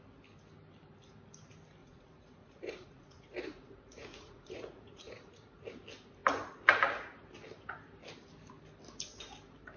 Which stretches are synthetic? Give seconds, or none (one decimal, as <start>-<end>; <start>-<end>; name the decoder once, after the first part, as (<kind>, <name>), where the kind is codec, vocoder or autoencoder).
1.8-5.7 (vocoder, Vocos)